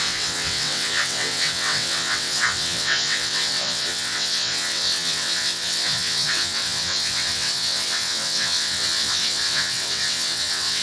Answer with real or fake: fake